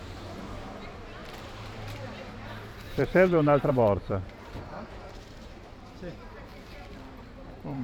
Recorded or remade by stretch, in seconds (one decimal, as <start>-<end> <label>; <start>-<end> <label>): 0.0-6.5 remade; 6.5-7.2 recorded; 7.2-7.8 remade